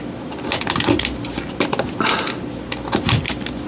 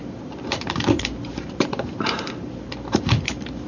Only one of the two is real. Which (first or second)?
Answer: first